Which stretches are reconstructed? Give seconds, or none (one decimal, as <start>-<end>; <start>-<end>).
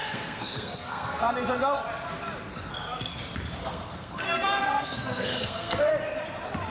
0.0-1.2; 2.5-3.2; 3.6-5.9